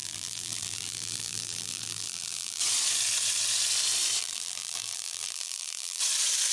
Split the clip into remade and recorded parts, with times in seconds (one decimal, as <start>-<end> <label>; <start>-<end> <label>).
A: 0.0-2.6 remade; 2.6-4.2 recorded; 4.2-6.0 remade; 6.0-6.5 recorded